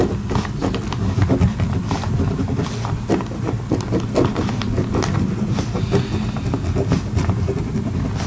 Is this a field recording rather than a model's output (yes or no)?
yes